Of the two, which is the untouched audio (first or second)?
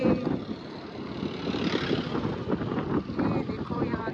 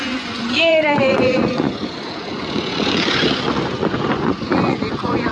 first